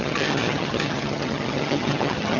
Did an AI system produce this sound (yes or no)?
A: yes